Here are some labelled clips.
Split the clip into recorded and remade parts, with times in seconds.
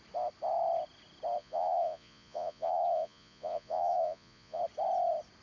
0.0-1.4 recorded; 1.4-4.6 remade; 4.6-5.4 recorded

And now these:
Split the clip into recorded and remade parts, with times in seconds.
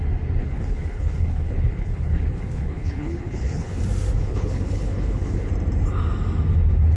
0.0-0.4 recorded; 0.4-3.8 remade; 3.8-4.2 recorded; 4.2-5.5 remade; 5.5-7.0 recorded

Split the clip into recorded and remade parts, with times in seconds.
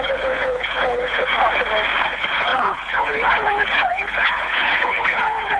0.0-1.3 remade; 1.3-2.1 recorded; 2.1-5.6 remade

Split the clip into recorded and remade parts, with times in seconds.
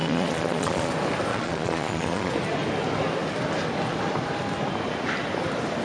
0.0-0.9 remade; 0.9-1.3 recorded; 1.3-2.3 remade; 2.3-5.8 recorded